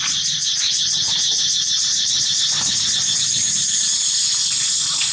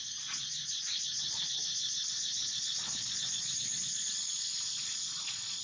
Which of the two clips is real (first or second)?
first